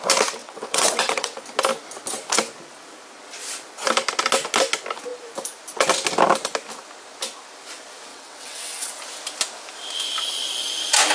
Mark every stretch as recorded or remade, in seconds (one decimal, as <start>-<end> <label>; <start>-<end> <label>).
0.0-0.4 recorded; 0.4-1.4 remade; 1.4-8.1 recorded; 8.1-8.9 remade; 8.9-11.1 recorded